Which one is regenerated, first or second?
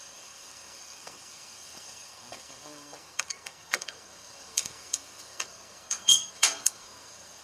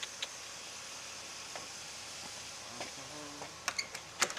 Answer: first